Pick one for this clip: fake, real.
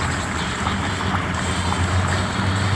real